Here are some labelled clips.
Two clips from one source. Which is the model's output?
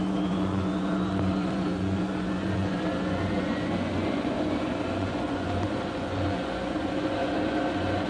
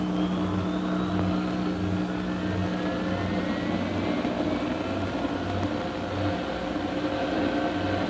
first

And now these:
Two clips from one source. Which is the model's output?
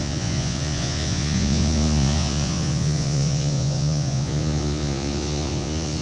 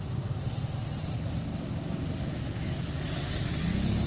first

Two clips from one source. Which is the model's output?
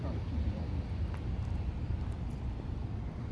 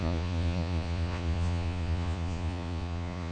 second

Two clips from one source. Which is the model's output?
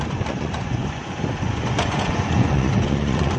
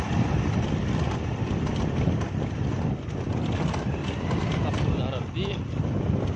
first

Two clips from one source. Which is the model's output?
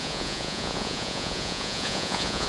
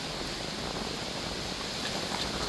first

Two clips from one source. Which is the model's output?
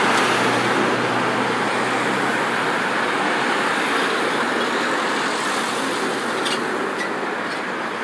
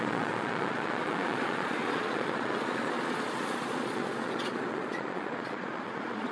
second